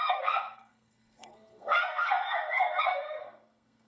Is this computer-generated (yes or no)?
yes